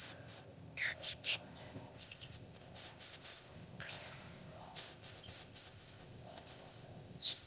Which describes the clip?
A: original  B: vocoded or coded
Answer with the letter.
B